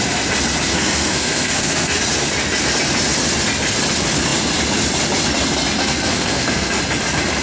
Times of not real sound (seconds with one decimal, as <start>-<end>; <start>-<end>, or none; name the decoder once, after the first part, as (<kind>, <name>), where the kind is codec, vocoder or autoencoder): 0.7-2.0 (codec, SNAC); 5.8-6.8